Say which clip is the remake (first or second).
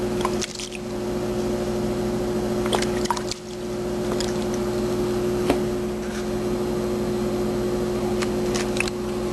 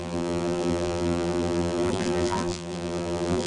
second